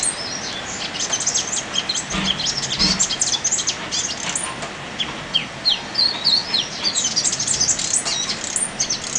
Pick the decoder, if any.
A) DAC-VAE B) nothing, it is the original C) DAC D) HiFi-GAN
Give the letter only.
B